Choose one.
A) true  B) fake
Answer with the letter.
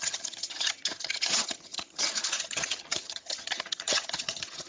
B